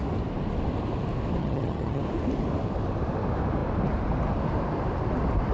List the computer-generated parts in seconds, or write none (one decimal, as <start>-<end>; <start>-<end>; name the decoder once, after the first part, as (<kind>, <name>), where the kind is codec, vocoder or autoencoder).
1.4-2.0 (vocoder, HiFi-GAN)